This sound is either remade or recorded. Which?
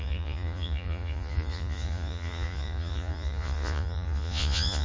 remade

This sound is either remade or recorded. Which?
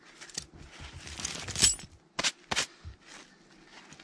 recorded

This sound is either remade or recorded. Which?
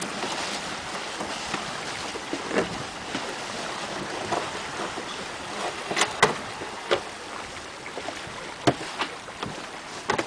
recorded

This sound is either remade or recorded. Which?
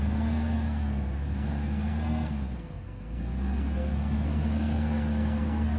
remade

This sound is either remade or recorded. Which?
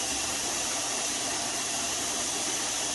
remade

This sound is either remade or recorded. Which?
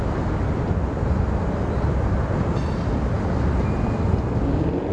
recorded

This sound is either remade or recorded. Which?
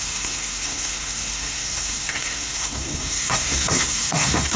remade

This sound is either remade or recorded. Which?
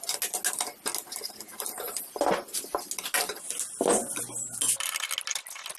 recorded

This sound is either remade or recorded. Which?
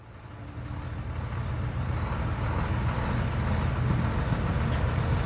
recorded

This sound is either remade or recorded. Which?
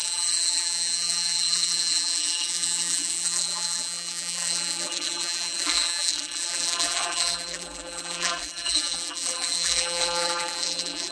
remade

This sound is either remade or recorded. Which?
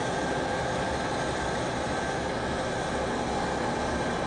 recorded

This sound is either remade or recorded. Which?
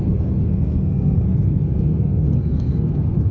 remade